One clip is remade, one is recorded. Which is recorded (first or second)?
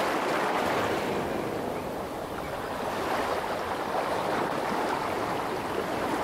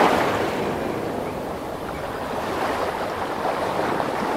first